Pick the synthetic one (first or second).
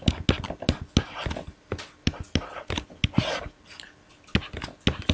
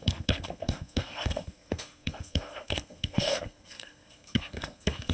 second